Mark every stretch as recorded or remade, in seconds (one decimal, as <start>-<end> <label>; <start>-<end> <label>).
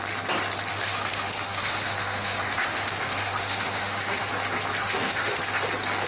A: 0.0-0.7 recorded; 0.7-4.3 remade; 4.3-4.8 recorded; 4.8-5.4 remade; 5.4-6.1 recorded